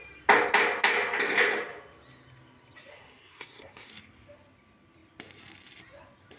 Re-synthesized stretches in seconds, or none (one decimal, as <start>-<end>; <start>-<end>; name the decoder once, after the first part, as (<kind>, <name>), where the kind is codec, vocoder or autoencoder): 2.9-3.9 (codec, SNAC)